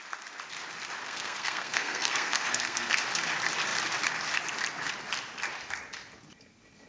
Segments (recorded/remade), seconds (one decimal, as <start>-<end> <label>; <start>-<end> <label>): 0.0-1.0 recorded; 1.0-3.0 remade; 3.0-6.9 recorded